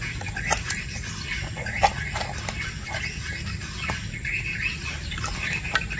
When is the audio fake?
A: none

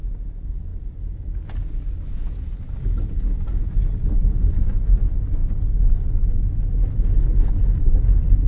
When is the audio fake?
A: none

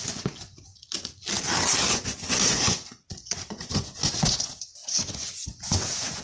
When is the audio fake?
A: 0.0-0.7 (vocoder, Vocos); 1.9-6.2

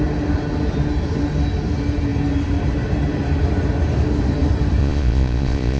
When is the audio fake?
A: 4.8-5.8 (vocoder, Vocos)

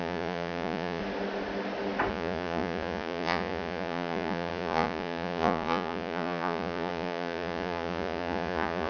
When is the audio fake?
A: 0.0-1.0 (vocoder, Vocos); 2.1-8.9

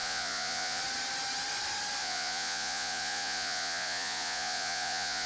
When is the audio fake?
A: 0.0-0.8 (vocoder, Vocos); 2.0-5.3